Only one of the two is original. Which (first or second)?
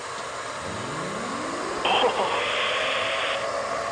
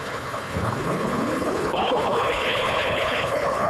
first